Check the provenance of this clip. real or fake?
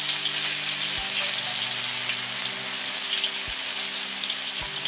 real